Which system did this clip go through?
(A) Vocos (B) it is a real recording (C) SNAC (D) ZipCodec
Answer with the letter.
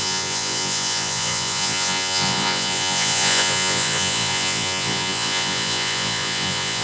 A